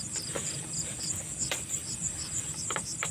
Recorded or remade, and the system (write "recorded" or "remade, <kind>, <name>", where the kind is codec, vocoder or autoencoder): remade, vocoder, BigVGAN v2